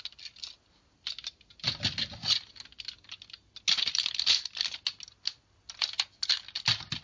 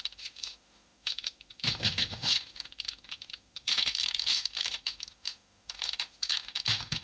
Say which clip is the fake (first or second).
second